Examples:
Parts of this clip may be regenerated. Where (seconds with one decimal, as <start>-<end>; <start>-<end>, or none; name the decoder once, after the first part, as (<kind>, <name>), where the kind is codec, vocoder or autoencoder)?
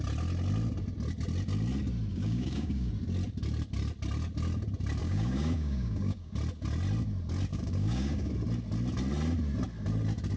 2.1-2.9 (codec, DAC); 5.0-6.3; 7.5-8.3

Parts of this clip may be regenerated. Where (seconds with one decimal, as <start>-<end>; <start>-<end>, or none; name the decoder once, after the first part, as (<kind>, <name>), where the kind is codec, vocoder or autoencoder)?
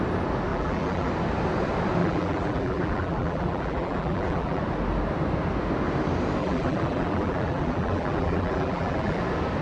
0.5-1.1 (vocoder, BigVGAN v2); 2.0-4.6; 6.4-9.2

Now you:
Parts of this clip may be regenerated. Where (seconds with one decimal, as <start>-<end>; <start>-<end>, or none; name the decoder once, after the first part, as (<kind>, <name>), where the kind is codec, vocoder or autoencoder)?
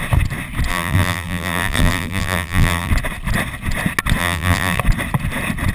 0.7-2.9 (vocoder, BigVGAN v2); 4.2-4.8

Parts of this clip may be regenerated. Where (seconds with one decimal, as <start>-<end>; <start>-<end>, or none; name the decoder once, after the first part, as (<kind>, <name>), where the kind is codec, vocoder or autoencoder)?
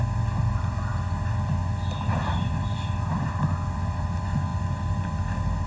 none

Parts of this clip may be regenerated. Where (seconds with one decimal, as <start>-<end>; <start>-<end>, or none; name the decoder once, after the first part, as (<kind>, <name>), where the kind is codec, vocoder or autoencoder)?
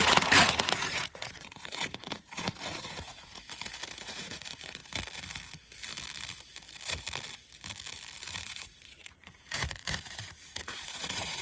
0.0-3.4 (vocoder, Vocos); 4.0-4.8; 8.3-11.4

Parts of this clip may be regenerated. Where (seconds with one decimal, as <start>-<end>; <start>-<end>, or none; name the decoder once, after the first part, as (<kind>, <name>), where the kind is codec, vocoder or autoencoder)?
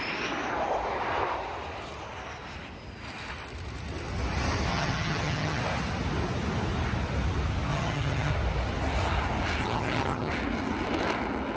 4.7-5.6 (vocoder, HiFi-GAN); 7.7-8.3; 9.6-10.3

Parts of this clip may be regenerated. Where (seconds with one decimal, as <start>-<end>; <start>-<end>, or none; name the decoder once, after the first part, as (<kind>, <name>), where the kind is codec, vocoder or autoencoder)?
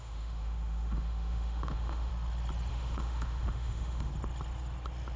0.0-2.1 (autoencoder, DAC-VAE); 2.7-4.1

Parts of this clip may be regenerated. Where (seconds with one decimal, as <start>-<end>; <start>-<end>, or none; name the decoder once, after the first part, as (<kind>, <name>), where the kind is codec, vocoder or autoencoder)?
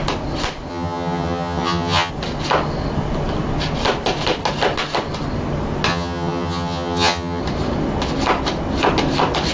0.7-2.1 (vocoder, HiFi-GAN); 5.9-7.4